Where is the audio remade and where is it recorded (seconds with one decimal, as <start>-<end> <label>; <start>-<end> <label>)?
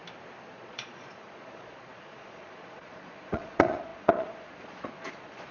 0.0-0.5 recorded; 0.5-5.5 remade